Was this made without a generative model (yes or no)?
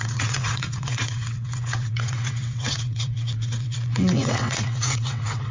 no